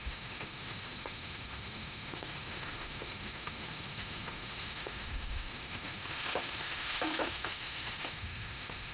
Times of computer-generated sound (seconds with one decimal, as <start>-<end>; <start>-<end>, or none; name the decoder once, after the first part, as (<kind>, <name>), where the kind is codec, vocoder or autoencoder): 0.0-8.9 (autoencoder, DAC-VAE)